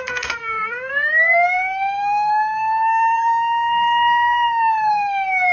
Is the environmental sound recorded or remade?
remade